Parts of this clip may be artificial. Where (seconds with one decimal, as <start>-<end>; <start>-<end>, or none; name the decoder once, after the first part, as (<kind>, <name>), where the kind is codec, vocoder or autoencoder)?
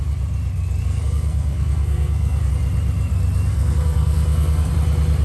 0.8-2.5 (codec, SNAC); 3.5-4.7